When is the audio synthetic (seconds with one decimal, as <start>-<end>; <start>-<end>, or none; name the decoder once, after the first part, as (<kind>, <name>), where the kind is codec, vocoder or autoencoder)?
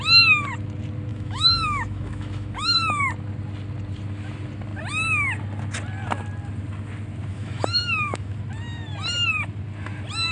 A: 1.1-3.1 (autoencoder, DAC-VAE); 7.3-8.4